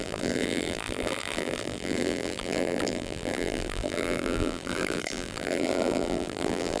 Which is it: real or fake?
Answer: fake